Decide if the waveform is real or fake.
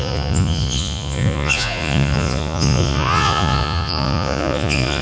fake